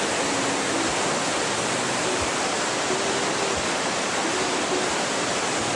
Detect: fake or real real